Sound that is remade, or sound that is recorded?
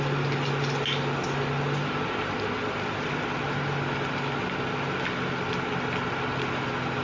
recorded